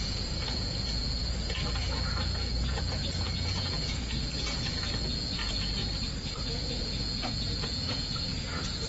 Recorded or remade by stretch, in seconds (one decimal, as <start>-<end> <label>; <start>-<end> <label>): 0.0-5.8 remade; 5.8-6.3 recorded; 6.3-8.9 remade

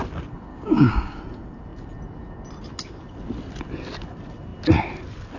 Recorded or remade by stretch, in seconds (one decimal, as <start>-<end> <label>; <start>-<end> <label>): 0.0-0.5 recorded; 0.5-1.2 remade; 1.2-5.4 recorded

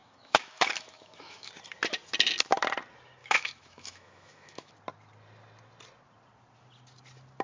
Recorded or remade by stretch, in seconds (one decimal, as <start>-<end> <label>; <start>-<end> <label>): 0.0-1.5 remade; 1.5-3.2 recorded; 3.2-4.7 remade; 4.7-7.4 recorded

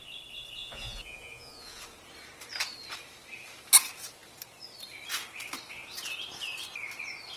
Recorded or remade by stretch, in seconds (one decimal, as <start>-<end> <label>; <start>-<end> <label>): 0.0-0.6 recorded; 0.6-1.8 remade; 1.8-7.4 recorded

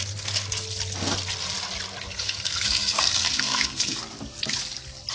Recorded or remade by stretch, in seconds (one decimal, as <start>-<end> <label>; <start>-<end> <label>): 0.0-2.1 recorded; 2.1-4.0 remade; 4.0-5.1 recorded

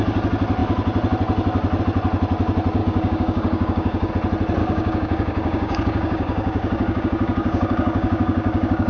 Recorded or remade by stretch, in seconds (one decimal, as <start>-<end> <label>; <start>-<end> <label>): 0.0-2.8 recorded; 2.8-4.1 remade; 4.1-4.6 recorded; 4.6-8.9 remade